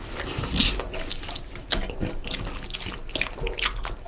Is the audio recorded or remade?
recorded